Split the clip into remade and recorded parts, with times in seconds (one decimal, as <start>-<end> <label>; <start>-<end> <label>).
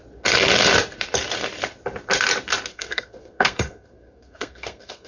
0.0-2.7 recorded; 2.7-5.1 remade